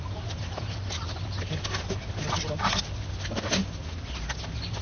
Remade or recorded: recorded